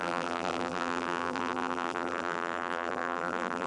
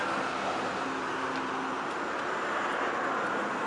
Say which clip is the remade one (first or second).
first